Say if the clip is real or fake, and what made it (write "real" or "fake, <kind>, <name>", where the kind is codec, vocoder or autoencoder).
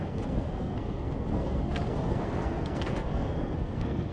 fake, codec, SNAC